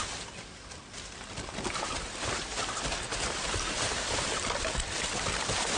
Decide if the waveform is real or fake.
fake